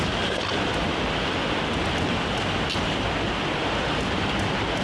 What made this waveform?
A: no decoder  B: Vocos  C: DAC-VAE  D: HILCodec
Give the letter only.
A